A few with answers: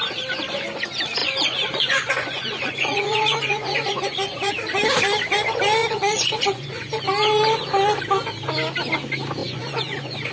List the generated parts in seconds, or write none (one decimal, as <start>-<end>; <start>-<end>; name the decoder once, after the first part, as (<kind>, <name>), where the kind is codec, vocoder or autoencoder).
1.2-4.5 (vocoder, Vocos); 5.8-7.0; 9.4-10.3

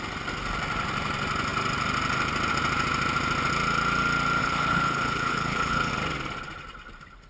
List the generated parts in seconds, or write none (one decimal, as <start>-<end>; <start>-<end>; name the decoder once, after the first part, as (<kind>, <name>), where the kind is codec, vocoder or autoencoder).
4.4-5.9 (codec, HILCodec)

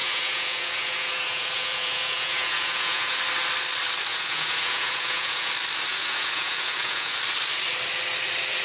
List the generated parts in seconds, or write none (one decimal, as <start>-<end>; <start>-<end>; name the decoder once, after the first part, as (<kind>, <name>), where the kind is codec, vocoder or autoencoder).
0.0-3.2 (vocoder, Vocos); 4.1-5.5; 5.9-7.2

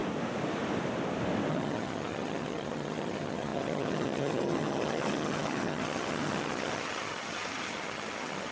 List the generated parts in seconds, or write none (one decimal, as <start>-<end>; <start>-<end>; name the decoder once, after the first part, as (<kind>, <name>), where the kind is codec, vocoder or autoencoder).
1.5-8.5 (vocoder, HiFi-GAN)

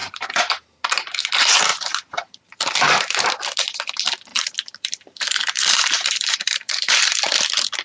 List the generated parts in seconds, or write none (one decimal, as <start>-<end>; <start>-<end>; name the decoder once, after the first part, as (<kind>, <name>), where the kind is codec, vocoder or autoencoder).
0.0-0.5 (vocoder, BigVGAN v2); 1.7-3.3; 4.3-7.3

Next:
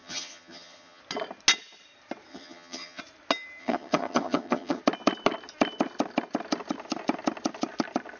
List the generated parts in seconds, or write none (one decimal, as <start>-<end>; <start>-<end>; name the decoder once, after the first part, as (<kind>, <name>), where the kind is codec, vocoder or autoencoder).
0.0-1.0 (vocoder, HiFi-GAN); 2.3-3.0; 3.6-4.8